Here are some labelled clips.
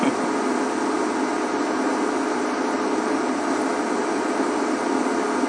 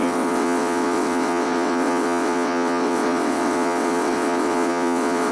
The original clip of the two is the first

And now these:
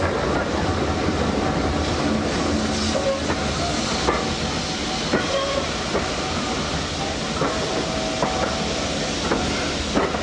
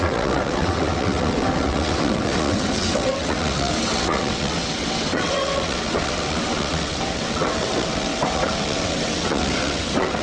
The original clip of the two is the first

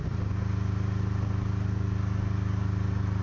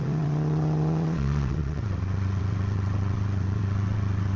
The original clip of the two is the first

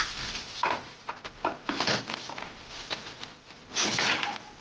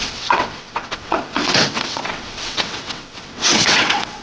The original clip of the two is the first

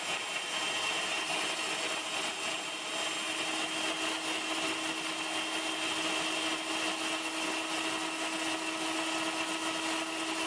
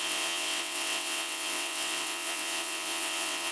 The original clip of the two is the first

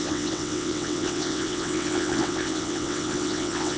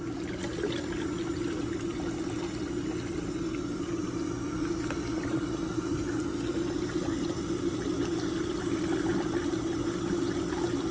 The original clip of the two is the second